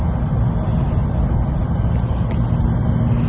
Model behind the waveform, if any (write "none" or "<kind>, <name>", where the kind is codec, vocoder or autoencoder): none